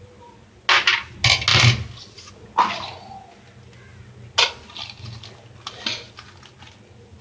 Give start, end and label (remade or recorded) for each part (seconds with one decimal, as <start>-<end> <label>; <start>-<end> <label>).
0.0-7.2 recorded